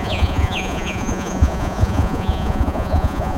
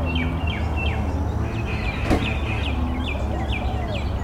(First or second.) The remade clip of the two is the first